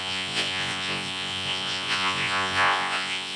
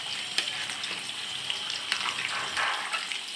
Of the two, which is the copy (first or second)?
first